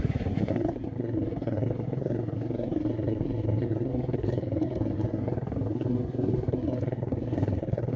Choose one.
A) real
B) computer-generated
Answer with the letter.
B